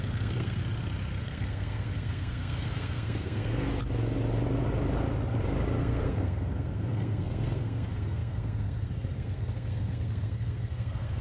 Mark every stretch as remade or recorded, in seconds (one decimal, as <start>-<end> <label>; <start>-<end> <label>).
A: 0.0-0.6 remade; 0.6-1.2 recorded; 1.2-3.7 remade; 3.7-5.8 recorded; 5.8-11.2 remade